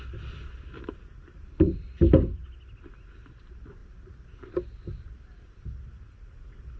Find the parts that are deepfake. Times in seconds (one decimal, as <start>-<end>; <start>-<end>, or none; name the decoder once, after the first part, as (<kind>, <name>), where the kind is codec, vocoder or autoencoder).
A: 3.8-5.8 (vocoder, BigVGAN v2)